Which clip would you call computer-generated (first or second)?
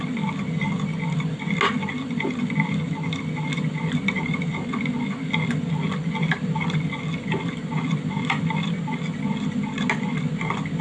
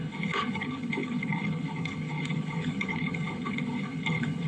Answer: second